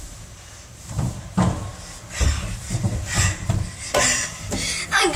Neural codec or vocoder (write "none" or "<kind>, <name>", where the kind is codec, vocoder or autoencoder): none